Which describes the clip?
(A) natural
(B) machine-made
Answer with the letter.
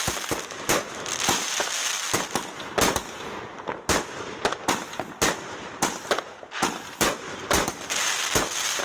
A